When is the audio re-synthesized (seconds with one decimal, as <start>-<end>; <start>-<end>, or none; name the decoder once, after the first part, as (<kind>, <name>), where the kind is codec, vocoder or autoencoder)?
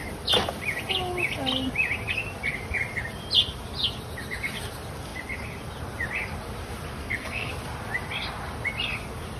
7.0-7.5 (codec, SNAC)